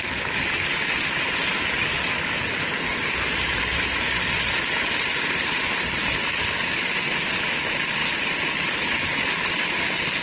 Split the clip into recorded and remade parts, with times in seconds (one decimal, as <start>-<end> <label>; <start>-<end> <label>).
0.0-2.9 recorded; 2.9-5.6 remade; 5.6-8.0 recorded; 8.0-8.8 remade; 8.8-10.2 recorded

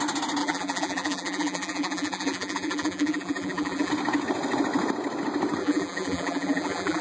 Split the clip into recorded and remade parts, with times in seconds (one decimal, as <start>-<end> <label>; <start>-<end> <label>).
0.0-0.4 recorded; 0.4-3.9 remade; 3.9-5.6 recorded; 5.6-7.0 remade

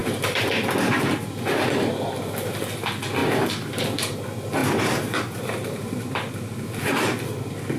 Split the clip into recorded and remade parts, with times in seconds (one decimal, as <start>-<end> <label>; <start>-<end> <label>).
0.0-0.6 remade; 0.6-3.2 recorded; 3.2-3.8 remade; 3.8-4.6 recorded; 4.6-6.3 remade; 6.3-7.8 recorded

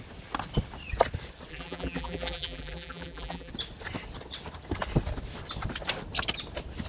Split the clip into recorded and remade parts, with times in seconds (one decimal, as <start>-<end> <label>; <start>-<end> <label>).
0.0-1.5 recorded; 1.5-3.5 remade; 3.5-6.9 recorded

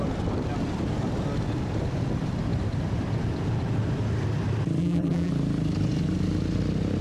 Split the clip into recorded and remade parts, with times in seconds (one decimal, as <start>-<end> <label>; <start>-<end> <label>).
0.0-4.8 recorded; 4.8-5.3 remade; 5.3-7.0 recorded

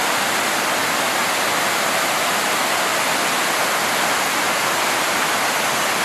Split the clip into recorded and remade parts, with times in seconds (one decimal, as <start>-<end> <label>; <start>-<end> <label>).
0.0-6.0 recorded